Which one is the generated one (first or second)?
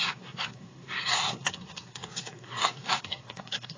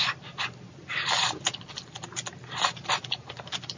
first